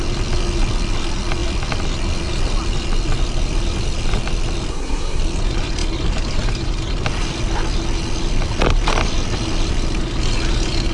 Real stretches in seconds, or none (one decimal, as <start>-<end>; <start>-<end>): 0.0-4.7; 5.2-10.9